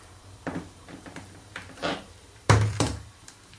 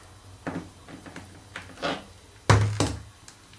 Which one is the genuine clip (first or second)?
second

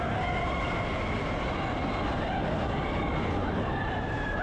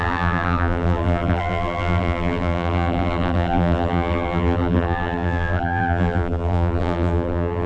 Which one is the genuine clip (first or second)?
first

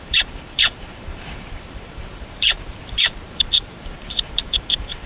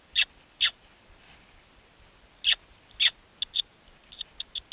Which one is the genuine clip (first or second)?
second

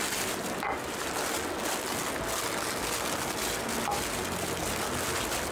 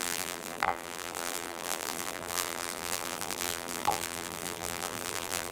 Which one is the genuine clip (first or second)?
first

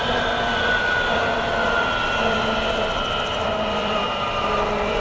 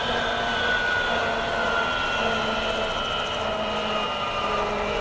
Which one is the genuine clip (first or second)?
second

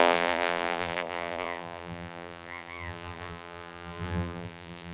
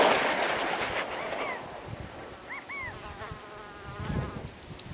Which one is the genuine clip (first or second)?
second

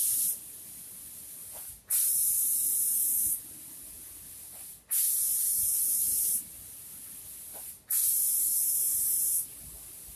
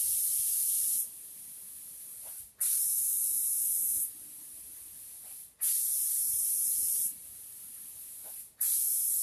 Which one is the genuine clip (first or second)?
first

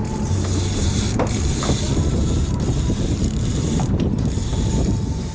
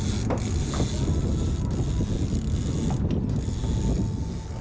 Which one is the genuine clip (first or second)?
second